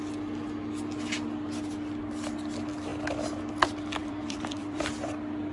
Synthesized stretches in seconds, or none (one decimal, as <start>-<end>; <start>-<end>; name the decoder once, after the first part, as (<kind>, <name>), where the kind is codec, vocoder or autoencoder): 4.0-5.5 (vocoder, BigVGAN v2)